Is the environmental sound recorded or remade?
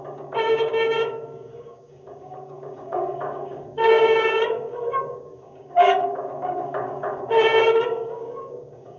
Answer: remade